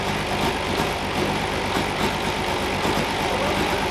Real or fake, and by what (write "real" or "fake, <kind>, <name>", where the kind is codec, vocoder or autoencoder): fake, vocoder, BigVGAN v2